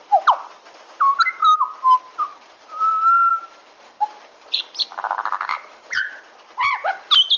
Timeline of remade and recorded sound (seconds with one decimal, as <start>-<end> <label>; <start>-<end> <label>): 0.0-2.3 recorded; 2.3-2.9 remade; 2.9-3.3 recorded; 3.3-4.6 remade; 4.6-5.5 recorded; 5.5-6.1 remade; 6.1-7.4 recorded